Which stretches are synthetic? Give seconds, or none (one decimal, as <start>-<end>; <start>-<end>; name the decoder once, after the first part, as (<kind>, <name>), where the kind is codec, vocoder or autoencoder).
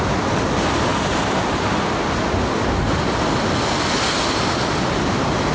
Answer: none